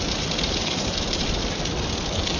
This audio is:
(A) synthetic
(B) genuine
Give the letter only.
B